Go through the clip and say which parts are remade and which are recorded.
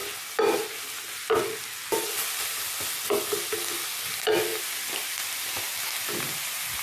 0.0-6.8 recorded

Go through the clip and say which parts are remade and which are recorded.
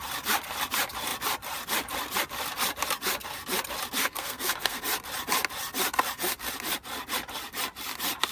0.0-4.0 recorded; 4.0-4.8 remade; 4.8-8.3 recorded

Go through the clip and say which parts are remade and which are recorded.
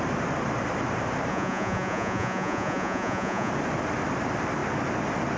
0.0-1.3 recorded; 1.3-3.5 remade; 3.5-5.4 recorded